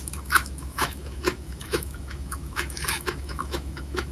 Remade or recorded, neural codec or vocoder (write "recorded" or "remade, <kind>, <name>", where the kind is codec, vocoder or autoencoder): remade, autoencoder, DAC-VAE